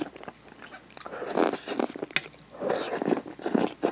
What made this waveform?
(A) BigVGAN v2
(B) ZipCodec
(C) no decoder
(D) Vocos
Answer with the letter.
C